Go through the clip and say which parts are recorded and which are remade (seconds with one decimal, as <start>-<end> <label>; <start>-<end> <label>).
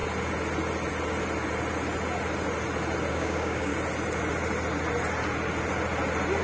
0.0-3.1 recorded; 3.1-3.7 remade; 3.7-6.4 recorded